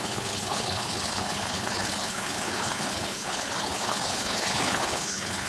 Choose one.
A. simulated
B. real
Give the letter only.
A